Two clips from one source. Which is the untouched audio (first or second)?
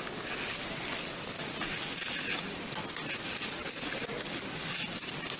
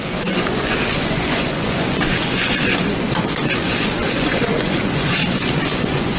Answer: first